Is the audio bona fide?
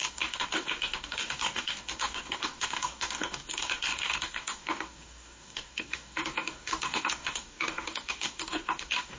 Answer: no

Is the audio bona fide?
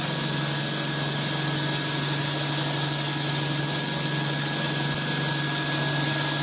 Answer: yes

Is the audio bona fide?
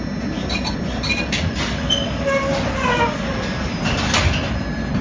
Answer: yes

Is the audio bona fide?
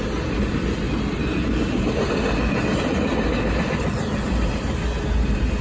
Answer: yes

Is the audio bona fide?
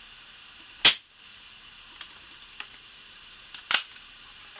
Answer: yes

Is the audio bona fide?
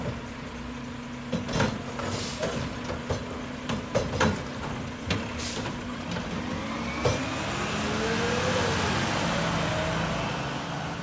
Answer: yes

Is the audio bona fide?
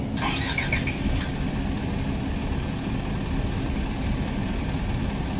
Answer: yes